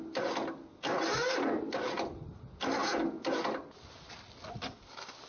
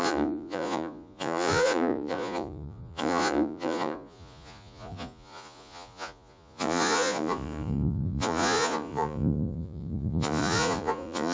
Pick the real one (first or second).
first